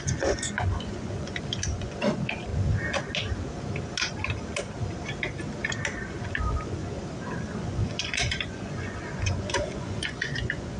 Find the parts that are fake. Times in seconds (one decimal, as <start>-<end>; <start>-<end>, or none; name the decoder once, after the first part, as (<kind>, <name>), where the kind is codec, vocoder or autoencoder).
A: 0.0-2.5 (vocoder, Vocos); 6.2-6.8; 7.3-10.8